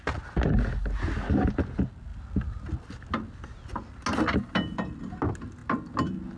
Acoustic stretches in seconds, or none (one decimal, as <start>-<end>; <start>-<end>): 0.0-6.4